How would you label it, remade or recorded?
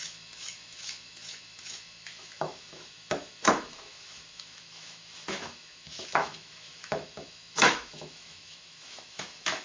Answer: remade